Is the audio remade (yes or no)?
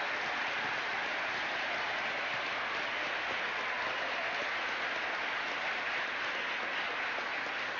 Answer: no